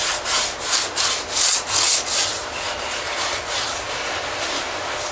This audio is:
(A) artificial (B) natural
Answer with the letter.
B